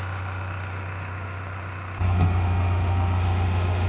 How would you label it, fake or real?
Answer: fake